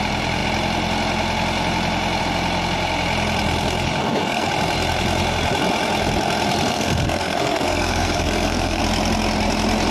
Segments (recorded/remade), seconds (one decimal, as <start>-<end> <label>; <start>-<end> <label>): 0.0-4.0 recorded; 4.0-4.5 remade; 4.5-6.7 recorded; 6.7-8.8 remade; 8.8-9.9 recorded